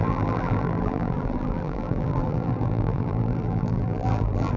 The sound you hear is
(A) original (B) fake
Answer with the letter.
B